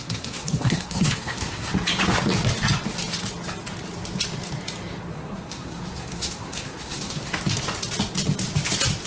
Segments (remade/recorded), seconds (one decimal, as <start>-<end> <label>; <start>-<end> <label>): 0.0-1.7 remade; 1.7-5.1 recorded; 5.1-7.3 remade; 7.3-9.1 recorded